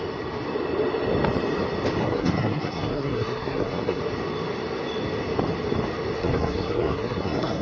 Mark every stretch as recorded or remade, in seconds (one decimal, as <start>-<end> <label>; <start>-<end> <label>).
0.0-2.0 recorded; 2.0-4.0 remade; 4.0-6.2 recorded; 6.2-7.6 remade